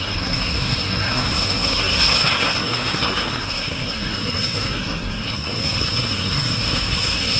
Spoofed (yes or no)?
yes